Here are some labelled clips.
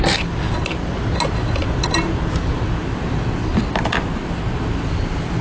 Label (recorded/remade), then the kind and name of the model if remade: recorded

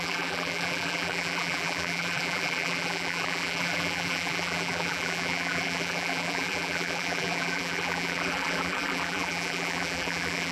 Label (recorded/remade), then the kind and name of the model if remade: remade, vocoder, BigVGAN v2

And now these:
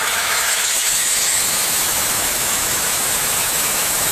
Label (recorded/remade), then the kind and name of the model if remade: remade, autoencoder, DAC-VAE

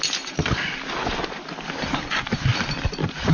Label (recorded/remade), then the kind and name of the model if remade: recorded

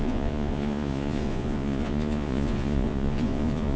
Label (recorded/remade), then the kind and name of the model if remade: remade, vocoder, Vocos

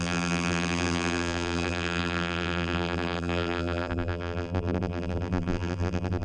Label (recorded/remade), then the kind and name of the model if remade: remade, vocoder, BigVGAN v2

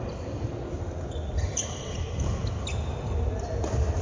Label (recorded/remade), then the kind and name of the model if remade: recorded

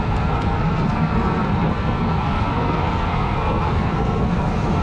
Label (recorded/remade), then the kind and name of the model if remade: remade, codec, SNAC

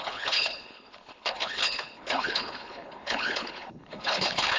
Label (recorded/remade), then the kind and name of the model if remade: remade, codec, HILCodec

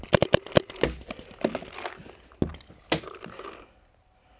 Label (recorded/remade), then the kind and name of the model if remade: recorded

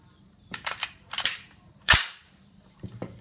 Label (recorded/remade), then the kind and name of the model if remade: remade, vocoder, BigVGAN v2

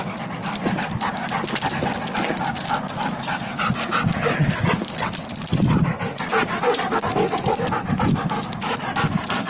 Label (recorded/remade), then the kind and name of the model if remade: recorded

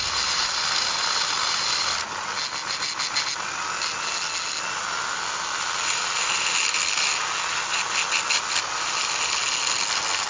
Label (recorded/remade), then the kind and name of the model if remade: recorded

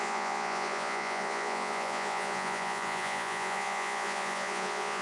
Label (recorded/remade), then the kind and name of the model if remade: remade, vocoder, Vocos